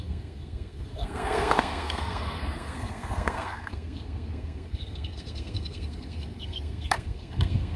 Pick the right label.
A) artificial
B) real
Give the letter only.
A